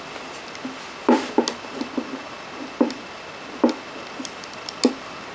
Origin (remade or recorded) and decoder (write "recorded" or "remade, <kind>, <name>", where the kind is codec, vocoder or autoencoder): recorded